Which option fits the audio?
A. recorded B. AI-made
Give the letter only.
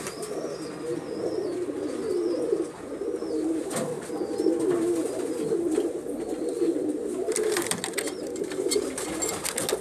A